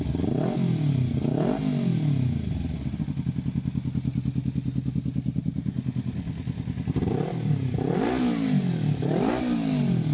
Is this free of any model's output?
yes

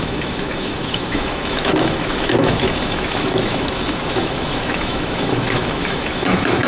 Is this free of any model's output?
no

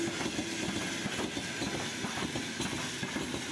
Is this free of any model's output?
yes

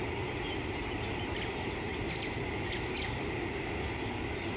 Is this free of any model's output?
yes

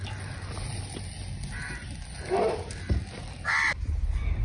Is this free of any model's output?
yes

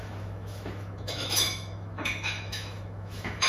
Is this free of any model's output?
no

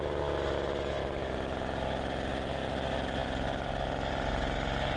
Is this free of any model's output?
yes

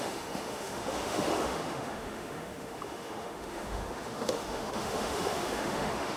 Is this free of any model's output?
no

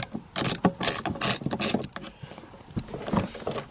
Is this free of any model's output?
yes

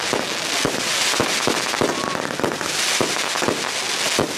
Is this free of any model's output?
yes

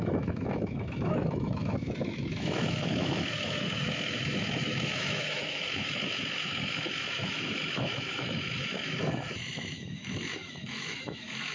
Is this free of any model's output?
no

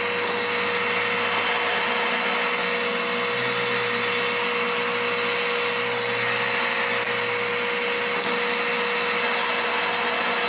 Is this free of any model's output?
yes